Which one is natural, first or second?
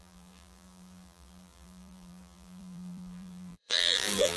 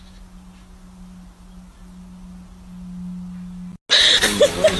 second